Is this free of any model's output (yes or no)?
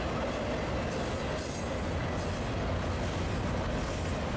yes